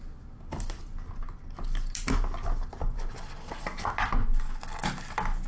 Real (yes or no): yes